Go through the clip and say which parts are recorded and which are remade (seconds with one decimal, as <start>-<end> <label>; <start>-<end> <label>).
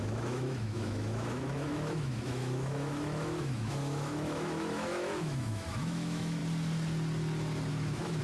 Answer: 0.0-6.4 remade; 6.4-7.7 recorded; 7.7-8.2 remade